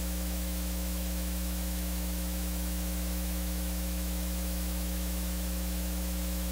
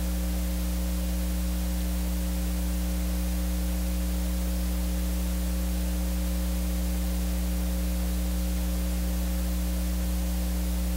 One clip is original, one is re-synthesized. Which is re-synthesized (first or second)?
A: first